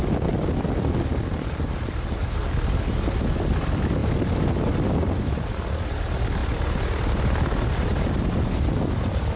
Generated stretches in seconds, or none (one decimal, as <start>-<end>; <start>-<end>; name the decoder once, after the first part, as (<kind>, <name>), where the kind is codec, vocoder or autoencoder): none

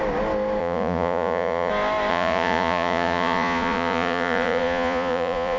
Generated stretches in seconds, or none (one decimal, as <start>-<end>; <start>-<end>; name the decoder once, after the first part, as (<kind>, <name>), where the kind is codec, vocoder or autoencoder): 0.6-1.7 (vocoder, Vocos); 2.1-5.6

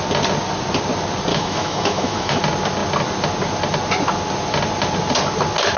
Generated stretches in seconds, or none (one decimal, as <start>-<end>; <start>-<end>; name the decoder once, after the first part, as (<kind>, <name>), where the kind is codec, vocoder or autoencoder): 1.3-2.4 (autoencoder, DAC-VAE)

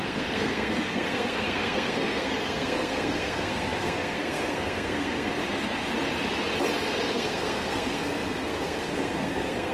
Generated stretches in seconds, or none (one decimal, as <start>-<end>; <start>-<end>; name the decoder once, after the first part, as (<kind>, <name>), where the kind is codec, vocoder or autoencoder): 0.0-5.3 (codec, SNAC); 7.1-9.7

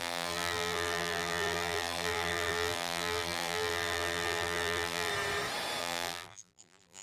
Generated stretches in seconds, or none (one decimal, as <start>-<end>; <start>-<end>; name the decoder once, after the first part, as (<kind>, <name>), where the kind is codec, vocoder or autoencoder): 0.0-5.1 (vocoder, BigVGAN v2); 5.8-7.0

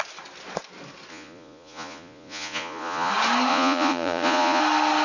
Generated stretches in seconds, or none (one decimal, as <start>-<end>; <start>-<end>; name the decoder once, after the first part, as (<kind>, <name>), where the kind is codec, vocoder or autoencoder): 1.1-3.1 (vocoder, Vocos); 3.5-4.6

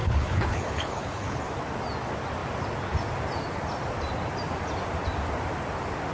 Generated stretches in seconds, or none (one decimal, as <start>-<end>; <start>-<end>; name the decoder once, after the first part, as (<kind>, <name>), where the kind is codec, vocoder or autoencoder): 0.0-1.4 (codec, HILCodec)